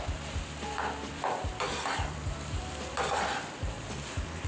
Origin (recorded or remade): remade